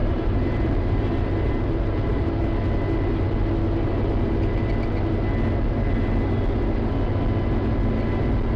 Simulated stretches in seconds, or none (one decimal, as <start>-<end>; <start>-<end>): 0.0-2.3